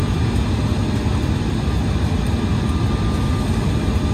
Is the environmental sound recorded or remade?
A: recorded